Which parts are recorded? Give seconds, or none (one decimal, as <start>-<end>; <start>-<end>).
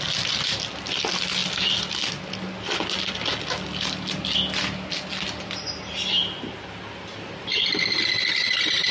0.0-8.9